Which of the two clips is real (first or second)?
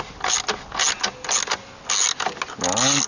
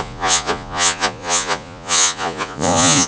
first